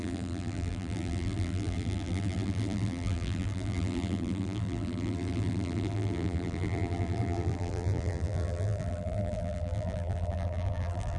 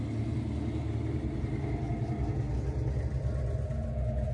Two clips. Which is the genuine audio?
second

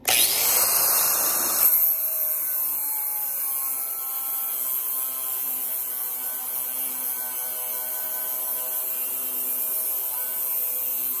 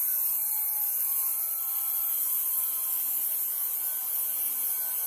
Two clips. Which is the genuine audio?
first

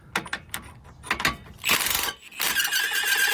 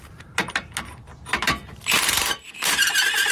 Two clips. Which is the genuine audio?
first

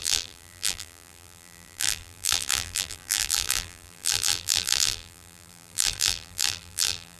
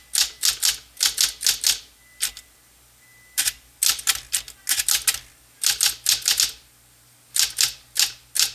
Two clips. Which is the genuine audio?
second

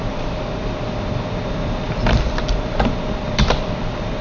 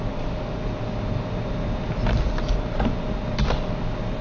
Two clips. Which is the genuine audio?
second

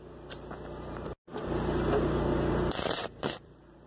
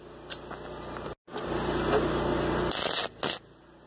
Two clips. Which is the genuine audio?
second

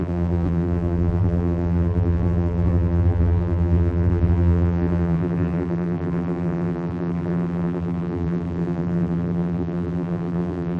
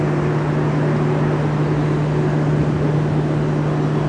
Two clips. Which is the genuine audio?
second